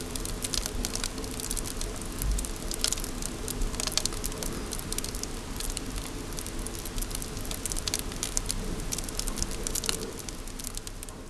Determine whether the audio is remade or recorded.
recorded